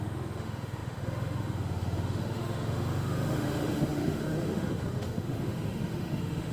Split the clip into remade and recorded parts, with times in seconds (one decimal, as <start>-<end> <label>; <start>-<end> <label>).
0.0-6.5 remade